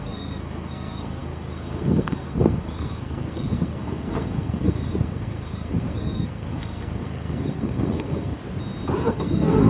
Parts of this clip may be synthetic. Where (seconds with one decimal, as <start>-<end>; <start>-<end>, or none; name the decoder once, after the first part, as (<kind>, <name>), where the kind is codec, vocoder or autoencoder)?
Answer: 0.0-8.4 (codec, SNAC); 9.0-9.7

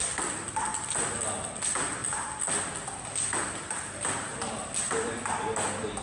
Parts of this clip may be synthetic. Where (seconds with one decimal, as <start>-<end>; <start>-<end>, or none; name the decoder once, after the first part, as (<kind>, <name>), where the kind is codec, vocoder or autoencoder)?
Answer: none

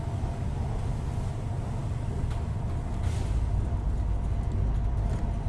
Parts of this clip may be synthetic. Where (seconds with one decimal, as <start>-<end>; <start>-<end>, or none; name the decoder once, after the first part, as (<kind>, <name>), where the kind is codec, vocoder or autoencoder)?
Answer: none

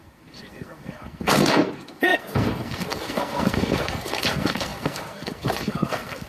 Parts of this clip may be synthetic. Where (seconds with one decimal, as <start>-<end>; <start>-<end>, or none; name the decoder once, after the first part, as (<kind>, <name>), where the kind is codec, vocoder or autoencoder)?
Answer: 0.0-6.3 (codec, SNAC)

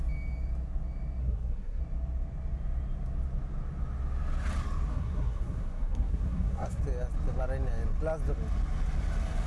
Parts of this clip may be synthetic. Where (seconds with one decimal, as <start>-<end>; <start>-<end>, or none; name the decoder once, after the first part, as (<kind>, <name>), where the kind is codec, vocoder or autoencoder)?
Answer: 1.2-1.8 (codec, SNAC); 4.9-6.8

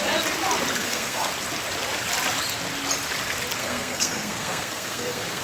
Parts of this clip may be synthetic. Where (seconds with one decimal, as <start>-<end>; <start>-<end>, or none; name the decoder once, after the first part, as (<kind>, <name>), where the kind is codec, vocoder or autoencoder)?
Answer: 0.8-1.3 (codec, SNAC); 3.6-5.4